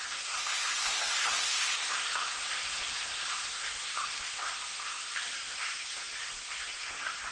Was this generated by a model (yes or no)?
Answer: yes